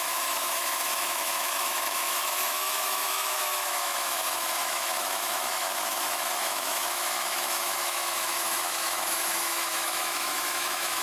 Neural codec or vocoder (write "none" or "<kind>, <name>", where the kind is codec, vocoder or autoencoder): autoencoder, DAC-VAE